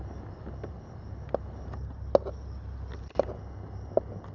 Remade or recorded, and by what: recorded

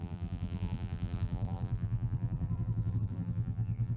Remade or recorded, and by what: remade, vocoder, BigVGAN v2